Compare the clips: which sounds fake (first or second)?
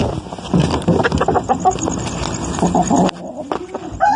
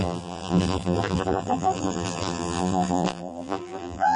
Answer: second